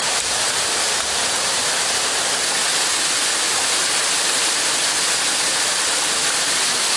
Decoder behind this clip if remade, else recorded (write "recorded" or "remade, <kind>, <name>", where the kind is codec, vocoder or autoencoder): recorded